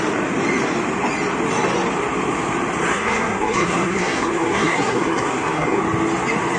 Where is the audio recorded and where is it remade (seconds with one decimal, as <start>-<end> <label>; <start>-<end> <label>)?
0.0-2.9 recorded; 2.9-5.8 remade; 5.8-6.6 recorded